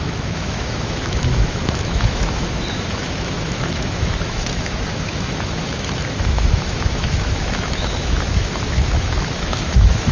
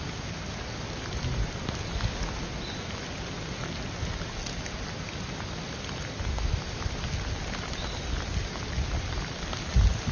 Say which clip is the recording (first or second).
second